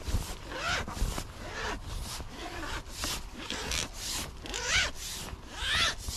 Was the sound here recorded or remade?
recorded